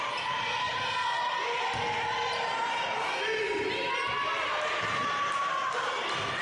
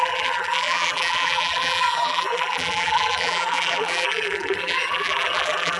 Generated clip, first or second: second